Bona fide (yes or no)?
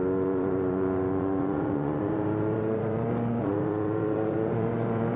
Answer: no